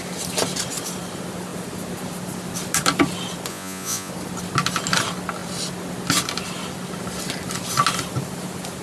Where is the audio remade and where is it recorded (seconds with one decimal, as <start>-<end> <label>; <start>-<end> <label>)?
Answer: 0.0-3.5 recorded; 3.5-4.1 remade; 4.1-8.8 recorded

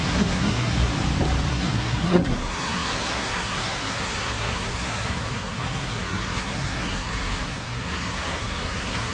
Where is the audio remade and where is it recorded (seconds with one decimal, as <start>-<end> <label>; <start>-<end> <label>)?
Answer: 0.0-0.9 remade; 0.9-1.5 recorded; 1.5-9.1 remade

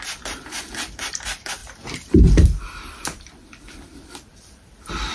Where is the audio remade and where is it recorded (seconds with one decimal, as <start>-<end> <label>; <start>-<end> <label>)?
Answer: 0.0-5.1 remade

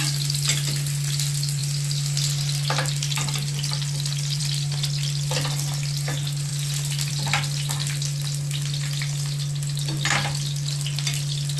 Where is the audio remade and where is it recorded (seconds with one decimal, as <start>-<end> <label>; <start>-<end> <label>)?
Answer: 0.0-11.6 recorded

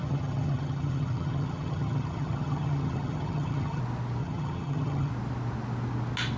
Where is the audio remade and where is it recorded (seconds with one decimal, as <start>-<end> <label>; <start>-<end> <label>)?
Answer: 0.0-3.8 remade; 3.8-4.2 recorded; 4.2-5.1 remade; 5.1-6.4 recorded